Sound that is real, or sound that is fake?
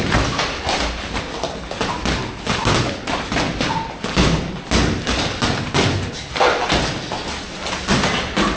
real